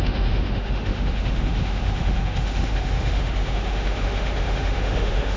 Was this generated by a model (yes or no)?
yes